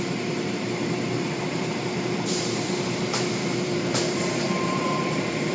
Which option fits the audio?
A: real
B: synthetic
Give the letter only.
B